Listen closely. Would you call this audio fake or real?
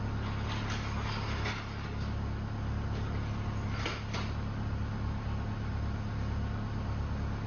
real